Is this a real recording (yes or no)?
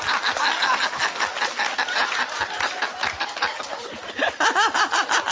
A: yes